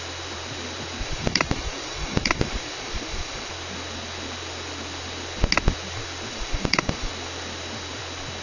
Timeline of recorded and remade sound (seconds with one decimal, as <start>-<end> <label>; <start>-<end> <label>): 0.0-1.0 recorded; 1.0-3.5 remade; 3.5-6.3 recorded; 6.3-7.1 remade; 7.1-8.4 recorded